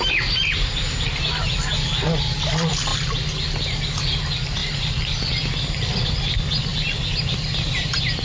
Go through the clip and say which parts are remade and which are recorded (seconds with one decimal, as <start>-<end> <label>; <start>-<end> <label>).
0.0-2.9 recorded; 2.9-3.8 remade; 3.8-4.6 recorded; 4.6-6.1 remade; 6.1-8.2 recorded